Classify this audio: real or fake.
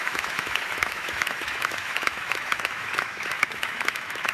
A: fake